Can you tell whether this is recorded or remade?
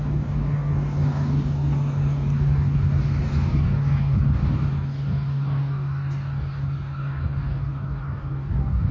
remade